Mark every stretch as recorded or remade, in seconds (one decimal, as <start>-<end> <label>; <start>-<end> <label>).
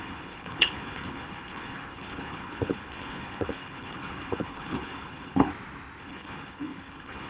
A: 0.0-5.5 remade; 5.5-6.0 recorded; 6.0-7.3 remade